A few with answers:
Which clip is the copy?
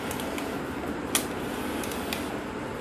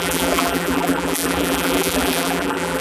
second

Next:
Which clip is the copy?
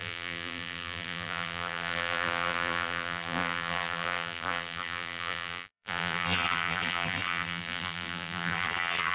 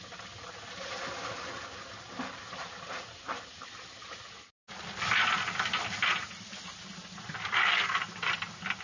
first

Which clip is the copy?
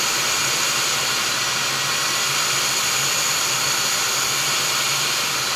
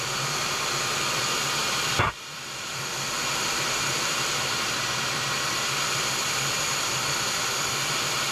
second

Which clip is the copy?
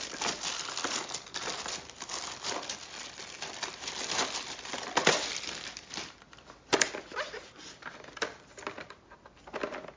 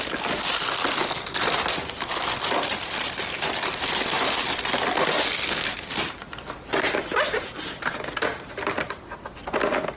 first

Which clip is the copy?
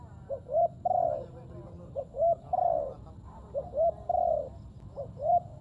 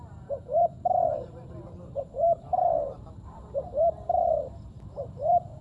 second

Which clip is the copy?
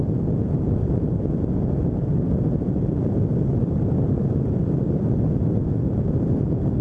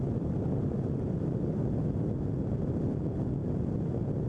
first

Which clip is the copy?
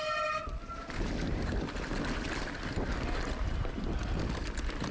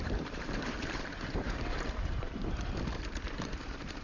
second